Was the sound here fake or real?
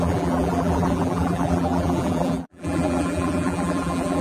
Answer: fake